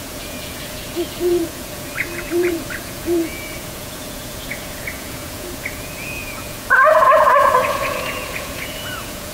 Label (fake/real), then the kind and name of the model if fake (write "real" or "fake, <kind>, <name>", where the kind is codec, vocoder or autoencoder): fake, vocoder, Vocos